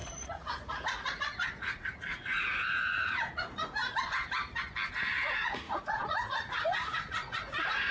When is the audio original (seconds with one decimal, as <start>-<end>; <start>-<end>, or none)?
3.8-4.9